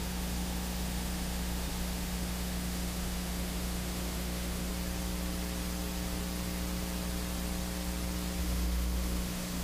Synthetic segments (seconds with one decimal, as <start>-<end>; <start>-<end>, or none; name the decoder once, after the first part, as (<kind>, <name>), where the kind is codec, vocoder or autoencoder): 0.0-4.7 (autoencoder, DAC-VAE); 8.4-9.6